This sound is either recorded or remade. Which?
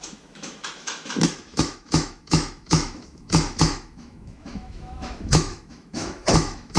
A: remade